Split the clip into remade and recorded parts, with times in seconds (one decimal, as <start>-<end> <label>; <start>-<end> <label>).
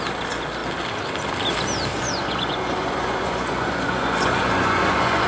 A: 0.0-1.9 recorded; 1.9-5.3 remade